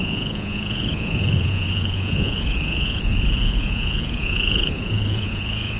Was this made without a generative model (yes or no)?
no